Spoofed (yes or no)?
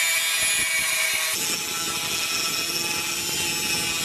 no